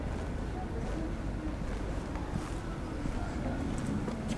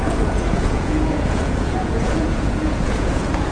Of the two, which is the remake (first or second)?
second